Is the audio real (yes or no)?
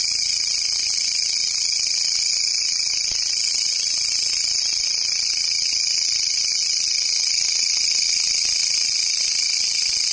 yes